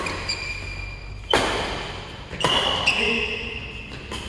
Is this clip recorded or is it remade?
recorded